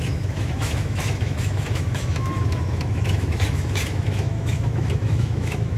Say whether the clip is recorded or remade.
remade